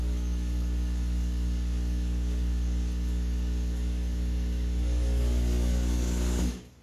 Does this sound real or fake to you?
fake